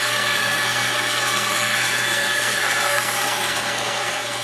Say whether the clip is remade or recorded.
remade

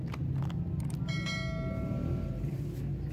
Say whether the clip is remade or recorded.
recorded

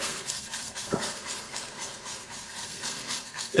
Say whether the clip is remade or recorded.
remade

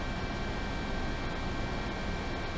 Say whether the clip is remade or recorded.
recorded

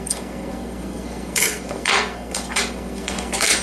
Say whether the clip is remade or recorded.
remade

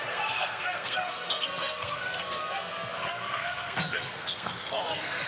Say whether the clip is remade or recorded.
remade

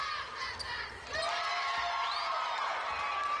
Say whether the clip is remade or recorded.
recorded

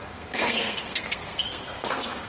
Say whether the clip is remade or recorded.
remade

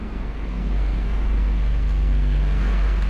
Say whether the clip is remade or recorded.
remade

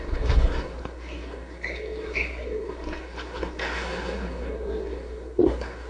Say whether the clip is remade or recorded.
remade